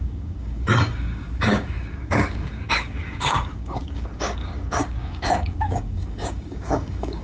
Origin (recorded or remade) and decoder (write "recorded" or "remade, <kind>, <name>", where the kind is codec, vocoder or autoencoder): remade, codec, DAC